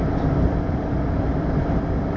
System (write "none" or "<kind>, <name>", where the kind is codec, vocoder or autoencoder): vocoder, BigVGAN v2